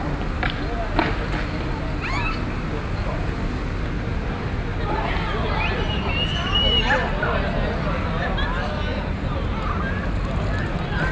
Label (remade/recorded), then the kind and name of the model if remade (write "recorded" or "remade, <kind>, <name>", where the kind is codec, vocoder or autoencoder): recorded